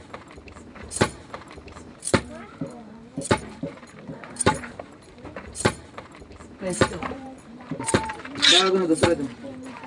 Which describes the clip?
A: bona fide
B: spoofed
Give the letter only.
B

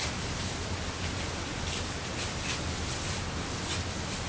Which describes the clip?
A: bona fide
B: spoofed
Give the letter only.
A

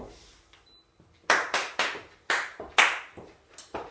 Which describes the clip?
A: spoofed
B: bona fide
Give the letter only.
B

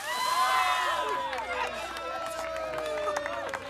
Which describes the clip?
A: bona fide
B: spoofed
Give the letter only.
A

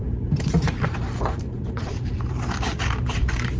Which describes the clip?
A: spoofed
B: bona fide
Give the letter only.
A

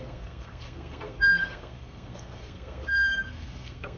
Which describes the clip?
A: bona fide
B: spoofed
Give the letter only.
B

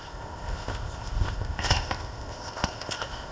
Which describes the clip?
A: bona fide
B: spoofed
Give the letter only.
B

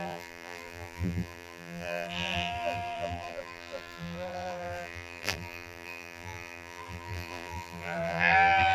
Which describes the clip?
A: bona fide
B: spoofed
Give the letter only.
B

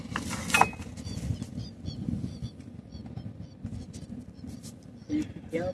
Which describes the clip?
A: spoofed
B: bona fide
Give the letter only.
B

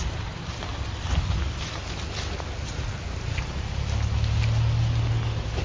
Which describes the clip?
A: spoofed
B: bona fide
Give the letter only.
B